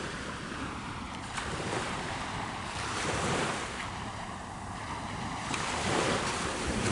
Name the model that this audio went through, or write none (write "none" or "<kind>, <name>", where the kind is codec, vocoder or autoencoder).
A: vocoder, BigVGAN v2